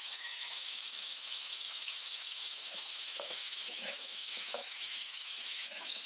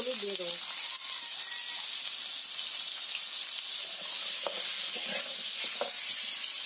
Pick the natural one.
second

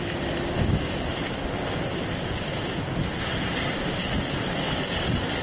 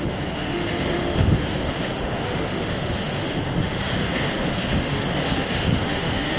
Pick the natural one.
first